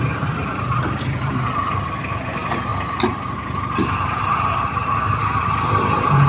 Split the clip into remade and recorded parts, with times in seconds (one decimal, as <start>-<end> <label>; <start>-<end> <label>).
0.0-2.7 remade; 2.7-4.2 recorded; 4.2-6.3 remade